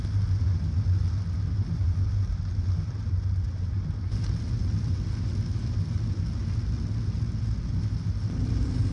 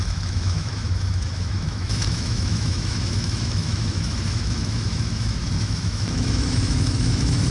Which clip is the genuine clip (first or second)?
first